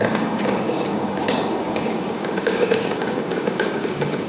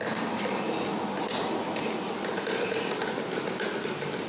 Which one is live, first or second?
second